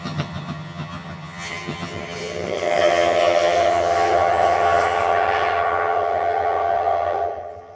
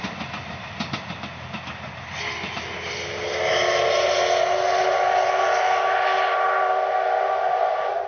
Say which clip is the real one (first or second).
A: second